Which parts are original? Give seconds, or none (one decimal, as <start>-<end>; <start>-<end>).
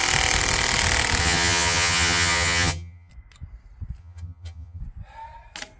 0.0-1.2; 3.1-4.0; 4.8-5.8